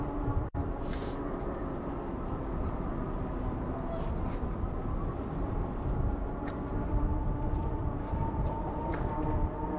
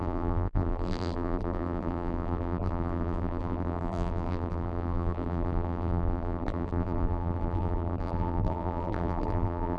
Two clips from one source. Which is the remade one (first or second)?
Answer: second